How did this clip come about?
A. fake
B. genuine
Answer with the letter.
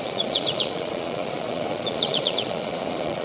A